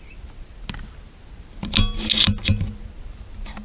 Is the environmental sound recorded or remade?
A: recorded